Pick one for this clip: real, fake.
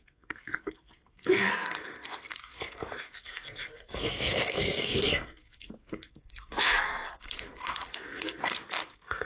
fake